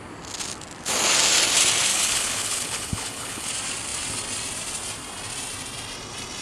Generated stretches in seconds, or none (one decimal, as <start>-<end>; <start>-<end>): 1.9-3.5

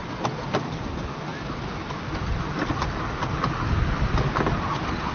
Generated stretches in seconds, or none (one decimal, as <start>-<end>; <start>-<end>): none

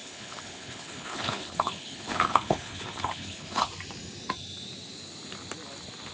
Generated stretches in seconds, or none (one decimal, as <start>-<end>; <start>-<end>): 0.0-3.7

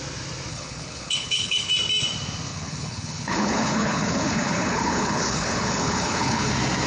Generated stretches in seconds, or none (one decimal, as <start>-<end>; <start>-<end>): 0.5-1.7; 2.5-6.5